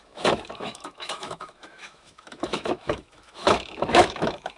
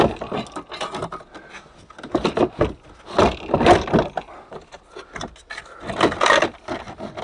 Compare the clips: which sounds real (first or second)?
second